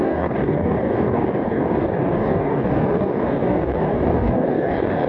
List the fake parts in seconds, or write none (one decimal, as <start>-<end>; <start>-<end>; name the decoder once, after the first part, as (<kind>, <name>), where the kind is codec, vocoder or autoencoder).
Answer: 0.0-5.1 (codec, DAC)